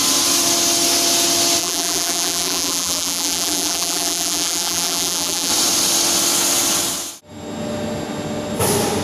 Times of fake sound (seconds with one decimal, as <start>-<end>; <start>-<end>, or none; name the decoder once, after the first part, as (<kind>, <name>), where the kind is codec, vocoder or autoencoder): 1.6-5.5 (vocoder, BigVGAN v2)